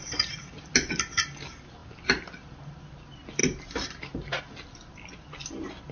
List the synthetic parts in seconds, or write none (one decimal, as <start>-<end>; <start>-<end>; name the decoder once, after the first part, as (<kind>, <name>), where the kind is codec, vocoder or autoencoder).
0.0-0.6 (vocoder, BigVGAN v2); 3.4-4.4